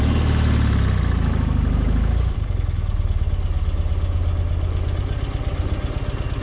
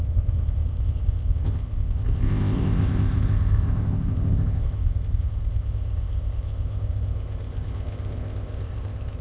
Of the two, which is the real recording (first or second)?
first